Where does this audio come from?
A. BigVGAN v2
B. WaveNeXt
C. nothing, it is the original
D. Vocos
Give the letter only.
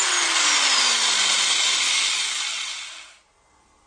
C